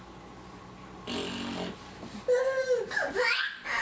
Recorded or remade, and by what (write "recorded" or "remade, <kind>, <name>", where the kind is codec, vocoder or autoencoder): recorded